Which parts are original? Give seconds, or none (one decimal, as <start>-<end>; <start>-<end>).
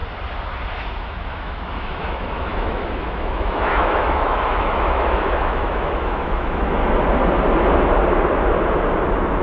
0.0-1.0; 6.8-9.4